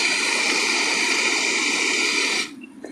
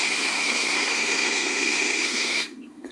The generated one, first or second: second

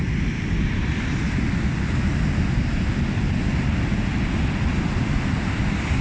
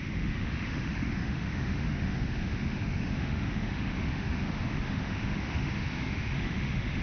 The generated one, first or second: second